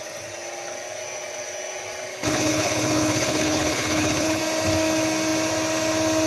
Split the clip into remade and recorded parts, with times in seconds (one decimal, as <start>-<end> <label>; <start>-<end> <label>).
0.0-2.1 recorded; 2.1-4.4 remade; 4.4-6.3 recorded